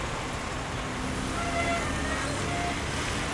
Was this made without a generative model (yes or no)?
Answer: yes